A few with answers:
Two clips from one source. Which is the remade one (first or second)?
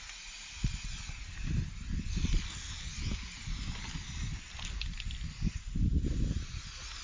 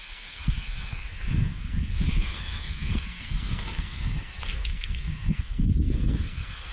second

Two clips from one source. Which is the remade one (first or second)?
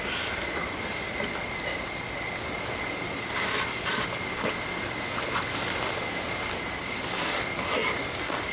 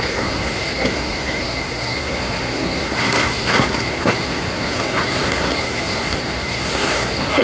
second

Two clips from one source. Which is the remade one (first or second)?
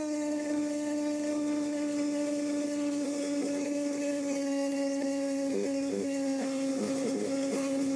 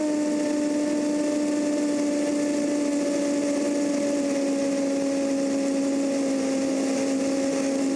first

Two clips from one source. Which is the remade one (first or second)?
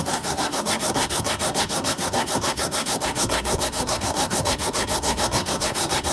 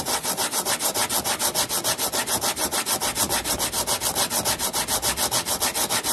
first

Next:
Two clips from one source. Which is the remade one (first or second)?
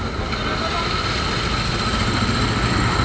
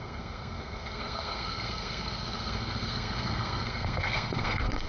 second